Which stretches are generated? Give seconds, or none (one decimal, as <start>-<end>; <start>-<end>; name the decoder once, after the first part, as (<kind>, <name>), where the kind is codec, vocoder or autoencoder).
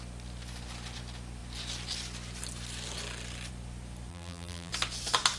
4.1-4.7 (vocoder, BigVGAN v2)